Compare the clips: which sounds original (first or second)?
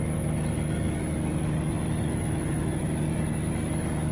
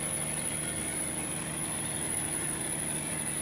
first